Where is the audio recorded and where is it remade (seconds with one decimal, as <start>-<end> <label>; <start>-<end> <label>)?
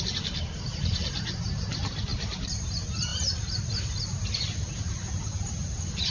0.0-3.1 remade; 3.1-3.7 recorded; 3.7-6.1 remade